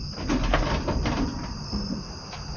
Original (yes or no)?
yes